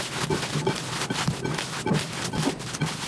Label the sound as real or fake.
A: real